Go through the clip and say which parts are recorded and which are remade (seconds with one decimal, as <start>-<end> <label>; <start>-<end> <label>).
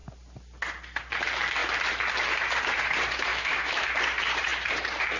0.0-3.3 recorded; 3.3-3.9 remade; 3.9-5.2 recorded